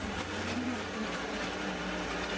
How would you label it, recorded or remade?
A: recorded